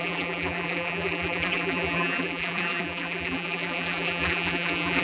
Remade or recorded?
remade